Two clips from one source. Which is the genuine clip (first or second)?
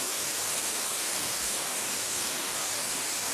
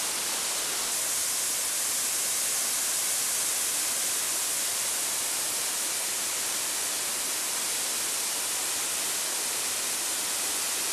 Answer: second